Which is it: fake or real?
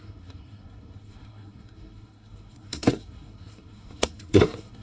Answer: fake